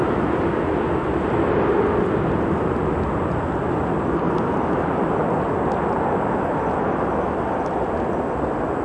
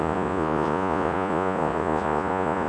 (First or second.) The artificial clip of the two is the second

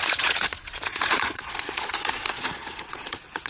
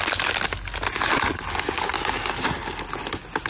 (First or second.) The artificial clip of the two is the first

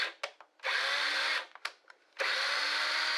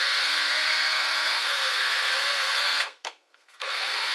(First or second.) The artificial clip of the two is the second